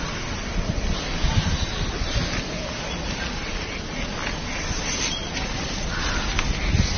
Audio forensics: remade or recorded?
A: recorded